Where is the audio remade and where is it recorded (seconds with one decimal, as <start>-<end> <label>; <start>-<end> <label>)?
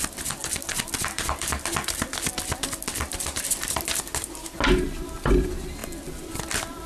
0.0-0.4 recorded; 0.4-3.8 remade; 3.8-6.9 recorded